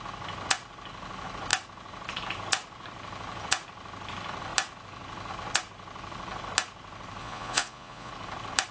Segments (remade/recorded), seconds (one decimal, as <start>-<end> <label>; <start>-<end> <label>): 0.0-7.2 recorded; 7.2-8.1 remade; 8.1-8.7 recorded